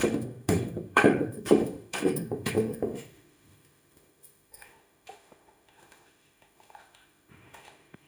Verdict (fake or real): fake